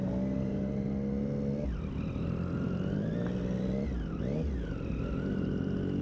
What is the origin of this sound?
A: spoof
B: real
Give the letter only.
B